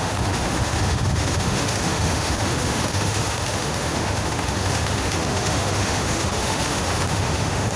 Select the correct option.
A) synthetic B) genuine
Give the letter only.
A